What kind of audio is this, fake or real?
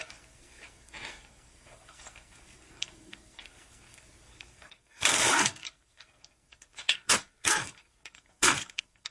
fake